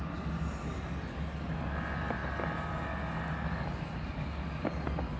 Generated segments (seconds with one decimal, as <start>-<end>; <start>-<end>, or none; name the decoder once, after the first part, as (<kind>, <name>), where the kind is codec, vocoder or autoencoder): none